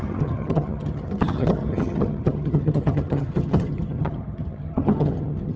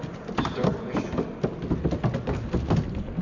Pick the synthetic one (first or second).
first